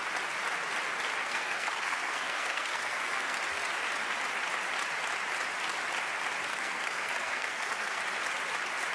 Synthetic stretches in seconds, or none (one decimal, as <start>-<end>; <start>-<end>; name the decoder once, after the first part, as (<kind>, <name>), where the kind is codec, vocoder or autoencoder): 1.2-3.4 (codec, SNAC); 6.5-8.0